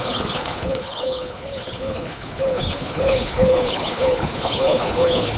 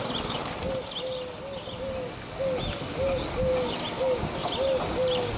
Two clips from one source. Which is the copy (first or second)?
first